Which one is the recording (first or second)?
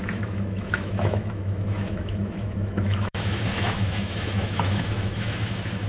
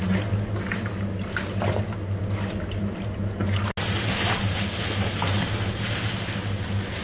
second